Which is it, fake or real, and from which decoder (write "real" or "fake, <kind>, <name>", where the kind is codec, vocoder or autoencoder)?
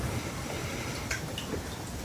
real